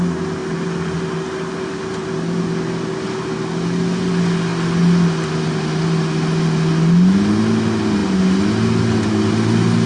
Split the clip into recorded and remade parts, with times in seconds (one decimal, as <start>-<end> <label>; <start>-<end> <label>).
0.0-9.9 recorded